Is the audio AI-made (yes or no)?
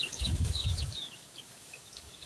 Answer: yes